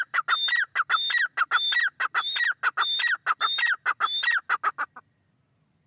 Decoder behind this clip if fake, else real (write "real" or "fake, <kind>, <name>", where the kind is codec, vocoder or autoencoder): real